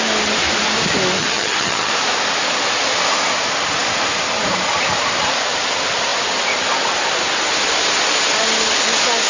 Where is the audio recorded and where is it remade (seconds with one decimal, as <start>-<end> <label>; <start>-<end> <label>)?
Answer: 0.0-1.2 recorded; 1.2-1.9 remade; 1.9-9.3 recorded